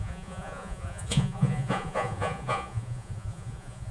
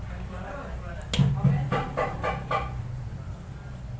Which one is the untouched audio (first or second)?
second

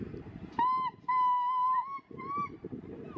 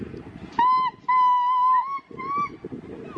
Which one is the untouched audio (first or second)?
second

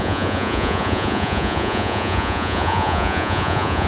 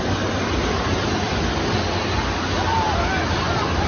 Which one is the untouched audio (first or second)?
second